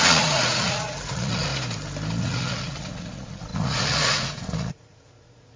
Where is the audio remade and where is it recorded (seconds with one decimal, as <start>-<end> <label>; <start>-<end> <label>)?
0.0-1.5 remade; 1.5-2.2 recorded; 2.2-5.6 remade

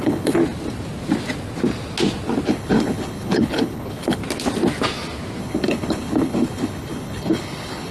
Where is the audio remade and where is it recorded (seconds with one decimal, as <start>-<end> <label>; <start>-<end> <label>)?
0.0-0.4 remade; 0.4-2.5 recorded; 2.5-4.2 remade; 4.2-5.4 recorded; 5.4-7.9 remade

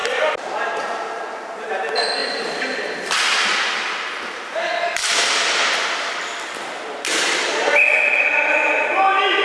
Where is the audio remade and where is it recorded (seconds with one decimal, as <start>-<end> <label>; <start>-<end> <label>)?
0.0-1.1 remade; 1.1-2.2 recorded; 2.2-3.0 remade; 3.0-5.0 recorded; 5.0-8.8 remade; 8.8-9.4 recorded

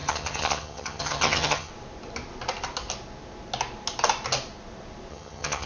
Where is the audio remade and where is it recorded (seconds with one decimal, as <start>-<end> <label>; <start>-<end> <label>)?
0.0-1.7 remade; 1.7-5.1 recorded; 5.1-5.7 remade

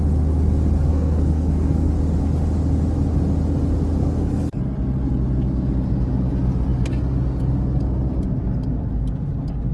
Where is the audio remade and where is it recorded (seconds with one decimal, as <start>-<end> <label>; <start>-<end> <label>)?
0.0-0.9 recorded; 0.9-1.9 remade; 1.9-4.0 recorded; 4.0-4.6 remade; 4.6-9.7 recorded

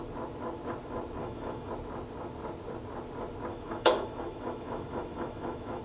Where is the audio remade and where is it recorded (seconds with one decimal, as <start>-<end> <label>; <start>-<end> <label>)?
0.0-1.2 recorded; 1.2-1.7 remade; 1.7-3.5 recorded; 3.5-5.8 remade

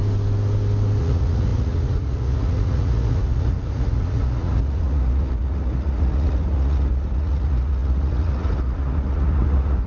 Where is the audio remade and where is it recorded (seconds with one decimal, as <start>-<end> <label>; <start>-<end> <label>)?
0.0-1.0 recorded; 1.0-9.9 remade